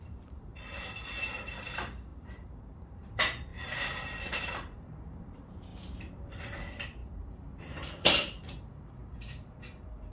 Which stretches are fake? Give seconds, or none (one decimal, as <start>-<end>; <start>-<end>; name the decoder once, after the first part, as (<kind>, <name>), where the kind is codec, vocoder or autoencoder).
0.0-10.1 (vocoder, BigVGAN v2)